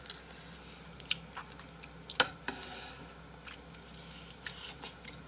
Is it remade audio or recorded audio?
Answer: recorded